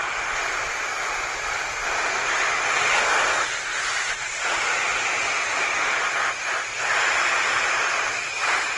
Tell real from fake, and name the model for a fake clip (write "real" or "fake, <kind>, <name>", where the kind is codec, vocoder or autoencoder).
real